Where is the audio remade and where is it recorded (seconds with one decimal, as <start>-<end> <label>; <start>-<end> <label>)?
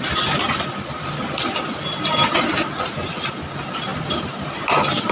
0.0-5.1 recorded